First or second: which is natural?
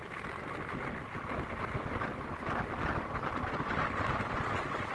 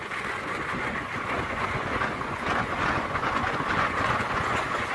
first